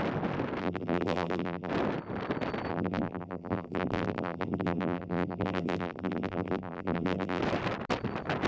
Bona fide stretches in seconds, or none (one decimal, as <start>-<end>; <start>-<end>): 0.0-0.6; 1.7-2.7; 7.4-8.5